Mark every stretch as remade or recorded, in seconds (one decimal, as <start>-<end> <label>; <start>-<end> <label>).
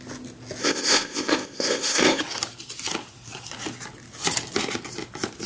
0.0-0.6 recorded; 0.6-2.2 remade; 2.2-5.5 recorded